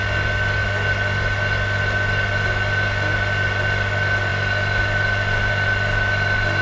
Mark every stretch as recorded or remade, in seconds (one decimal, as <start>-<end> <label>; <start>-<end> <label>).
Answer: 0.0-6.6 recorded